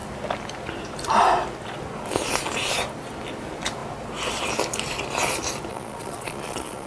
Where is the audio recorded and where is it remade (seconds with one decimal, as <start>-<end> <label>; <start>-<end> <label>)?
0.0-5.7 recorded; 5.7-6.9 remade